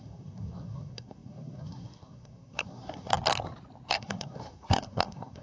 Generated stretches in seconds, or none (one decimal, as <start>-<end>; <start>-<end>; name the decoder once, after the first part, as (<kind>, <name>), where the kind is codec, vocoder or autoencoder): 0.0-3.1 (codec, SNAC); 3.9-5.4